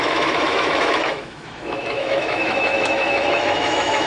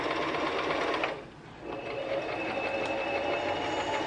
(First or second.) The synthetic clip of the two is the first